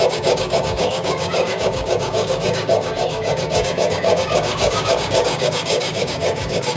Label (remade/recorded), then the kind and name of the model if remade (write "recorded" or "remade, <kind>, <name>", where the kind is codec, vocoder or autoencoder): remade, codec, DAC